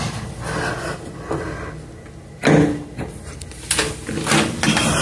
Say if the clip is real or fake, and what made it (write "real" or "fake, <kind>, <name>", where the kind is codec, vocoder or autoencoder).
real